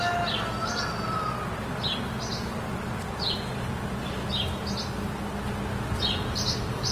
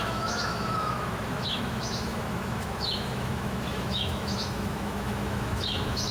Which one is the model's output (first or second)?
second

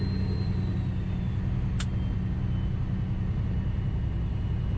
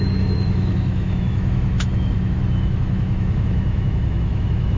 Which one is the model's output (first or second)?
second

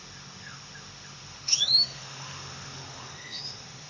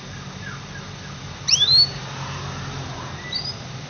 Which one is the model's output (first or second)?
first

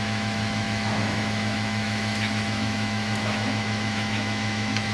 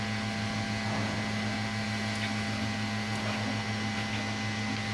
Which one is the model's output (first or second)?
first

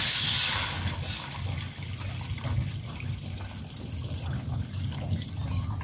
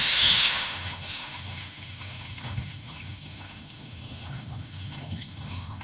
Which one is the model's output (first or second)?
second